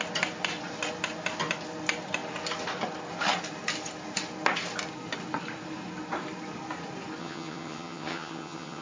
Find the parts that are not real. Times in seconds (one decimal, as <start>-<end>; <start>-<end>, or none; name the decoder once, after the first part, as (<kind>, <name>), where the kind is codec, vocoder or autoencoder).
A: 7.2-8.8 (vocoder, HiFi-GAN)